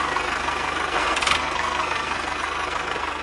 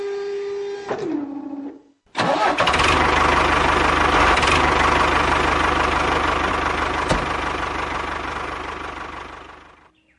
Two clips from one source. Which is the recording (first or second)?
second